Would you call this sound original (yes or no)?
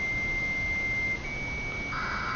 yes